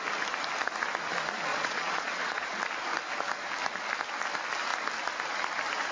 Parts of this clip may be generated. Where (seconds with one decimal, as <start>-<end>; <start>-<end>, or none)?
1.5-2.6